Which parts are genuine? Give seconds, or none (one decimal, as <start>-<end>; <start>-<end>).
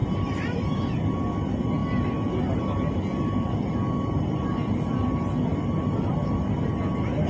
0.8-5.5; 6.4-7.3